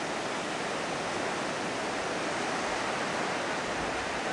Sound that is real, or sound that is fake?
real